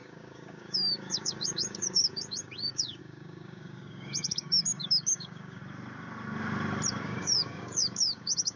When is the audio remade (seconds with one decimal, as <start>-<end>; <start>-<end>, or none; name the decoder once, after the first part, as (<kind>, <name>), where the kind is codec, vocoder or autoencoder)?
0.0-5.6 (codec, DAC); 6.9-8.6